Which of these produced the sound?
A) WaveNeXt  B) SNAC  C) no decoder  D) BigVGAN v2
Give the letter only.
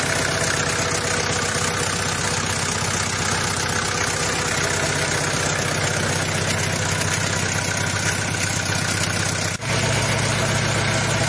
C